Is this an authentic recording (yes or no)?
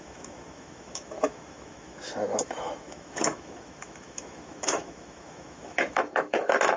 no